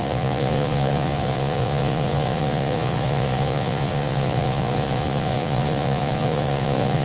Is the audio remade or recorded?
remade